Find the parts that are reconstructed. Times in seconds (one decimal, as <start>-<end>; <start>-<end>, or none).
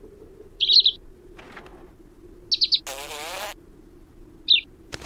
none